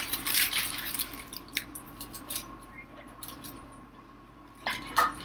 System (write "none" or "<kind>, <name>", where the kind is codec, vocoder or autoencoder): vocoder, BigVGAN v2